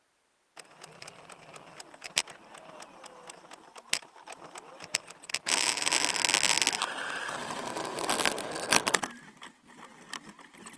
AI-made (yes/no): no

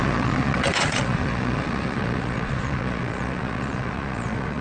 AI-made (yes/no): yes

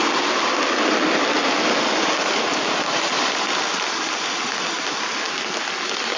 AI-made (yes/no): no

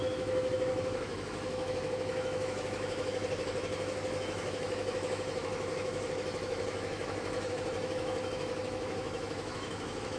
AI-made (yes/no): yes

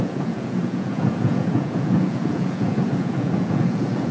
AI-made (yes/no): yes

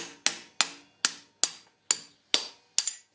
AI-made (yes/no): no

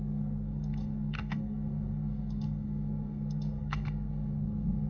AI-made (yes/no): yes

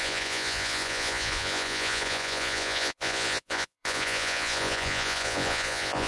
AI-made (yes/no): yes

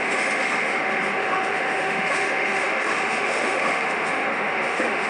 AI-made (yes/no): yes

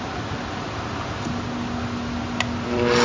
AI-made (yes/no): no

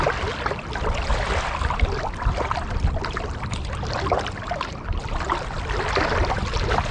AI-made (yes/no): no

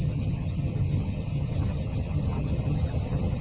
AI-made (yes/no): yes